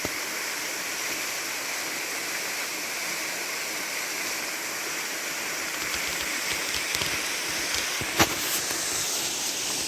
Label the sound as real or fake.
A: real